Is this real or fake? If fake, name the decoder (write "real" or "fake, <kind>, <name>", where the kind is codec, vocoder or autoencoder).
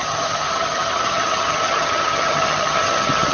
fake, vocoder, HiFi-GAN